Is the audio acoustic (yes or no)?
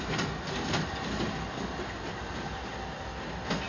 yes